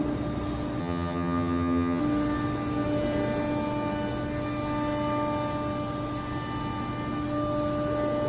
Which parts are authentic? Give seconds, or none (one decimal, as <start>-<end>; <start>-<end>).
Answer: 0.0-0.8; 2.0-8.3